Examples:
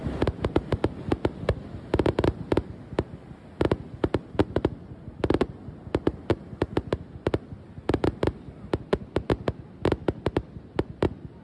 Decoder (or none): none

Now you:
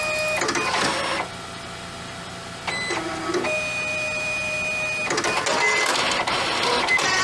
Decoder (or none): none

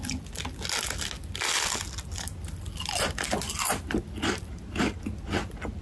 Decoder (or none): none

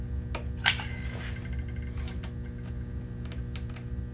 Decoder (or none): none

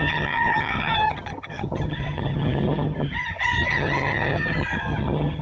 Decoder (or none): vocoder, HiFi-GAN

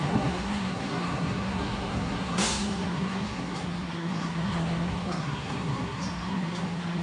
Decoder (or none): codec, SNAC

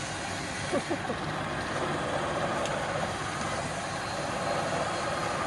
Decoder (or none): none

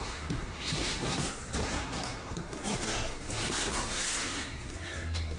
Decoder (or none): codec, SNAC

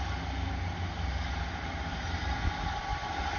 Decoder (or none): none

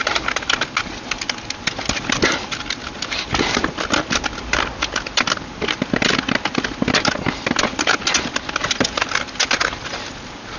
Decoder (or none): none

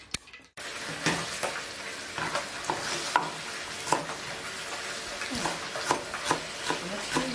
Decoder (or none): none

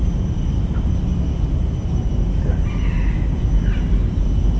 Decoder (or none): none